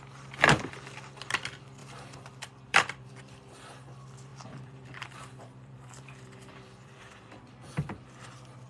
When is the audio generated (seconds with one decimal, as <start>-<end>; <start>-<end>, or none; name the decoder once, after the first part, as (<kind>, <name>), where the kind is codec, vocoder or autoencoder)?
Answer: 1.8-3.2 (vocoder, BigVGAN v2); 4.3-7.5